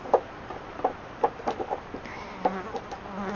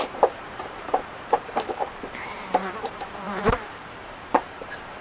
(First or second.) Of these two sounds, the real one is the first